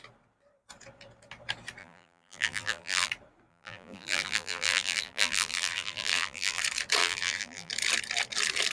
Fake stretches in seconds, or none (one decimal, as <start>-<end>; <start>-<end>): 1.8-3.1; 3.5-6.6; 7.0-7.7